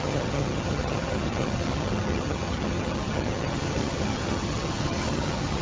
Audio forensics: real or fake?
fake